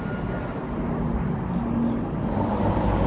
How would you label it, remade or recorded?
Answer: recorded